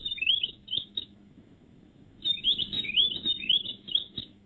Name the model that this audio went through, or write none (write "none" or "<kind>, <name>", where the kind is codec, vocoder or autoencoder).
autoencoder, DAC-VAE